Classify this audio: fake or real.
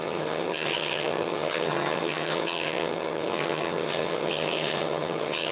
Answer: fake